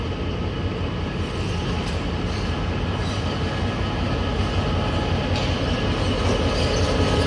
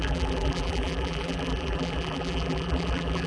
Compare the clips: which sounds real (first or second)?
first